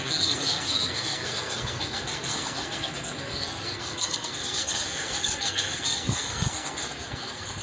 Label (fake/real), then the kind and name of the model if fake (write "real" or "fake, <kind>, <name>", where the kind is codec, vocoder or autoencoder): fake, codec, SNAC